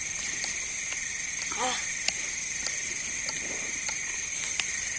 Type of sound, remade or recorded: remade